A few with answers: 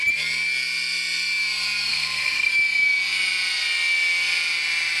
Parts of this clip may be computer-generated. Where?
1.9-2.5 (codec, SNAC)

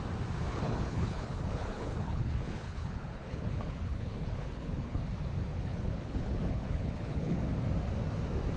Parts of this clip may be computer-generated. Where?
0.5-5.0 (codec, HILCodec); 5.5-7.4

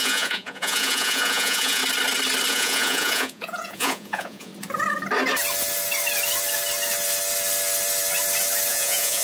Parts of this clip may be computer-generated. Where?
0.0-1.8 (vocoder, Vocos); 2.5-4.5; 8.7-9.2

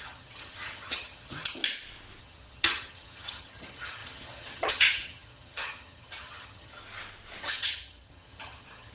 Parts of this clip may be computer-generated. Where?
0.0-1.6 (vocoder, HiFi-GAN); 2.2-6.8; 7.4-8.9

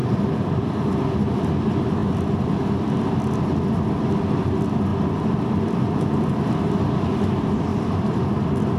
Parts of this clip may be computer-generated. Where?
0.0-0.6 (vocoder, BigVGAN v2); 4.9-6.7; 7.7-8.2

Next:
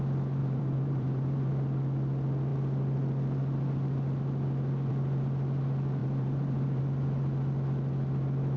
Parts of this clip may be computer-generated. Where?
0.4-1.5 (vocoder, BigVGAN v2); 6.0-6.8

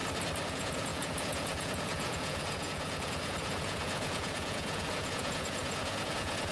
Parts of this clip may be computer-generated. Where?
0.5-6.5 (vocoder, Vocos)

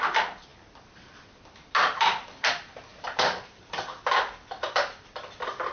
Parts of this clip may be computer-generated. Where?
none